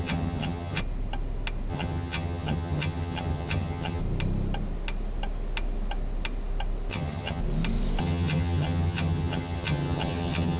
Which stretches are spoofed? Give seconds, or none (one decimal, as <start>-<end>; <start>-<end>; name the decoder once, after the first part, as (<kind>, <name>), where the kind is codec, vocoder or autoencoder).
0.0-0.8 (vocoder, HiFi-GAN); 1.7-4.0; 6.9-7.4; 8.0-10.6